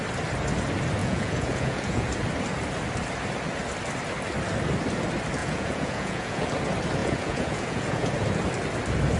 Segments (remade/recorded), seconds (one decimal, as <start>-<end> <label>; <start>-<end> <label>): 0.0-1.0 recorded; 1.0-2.1 remade; 2.1-5.4 recorded; 5.4-6.5 remade; 6.5-7.0 recorded; 7.0-8.1 remade; 8.1-9.2 recorded